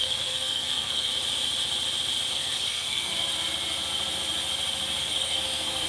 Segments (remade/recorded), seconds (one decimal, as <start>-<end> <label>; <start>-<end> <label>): 0.0-1.1 remade; 1.1-2.3 recorded; 2.3-3.1 remade; 3.1-5.0 recorded; 5.0-5.9 remade